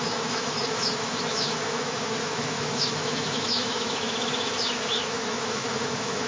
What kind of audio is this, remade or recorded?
remade